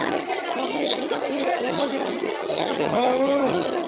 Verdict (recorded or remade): remade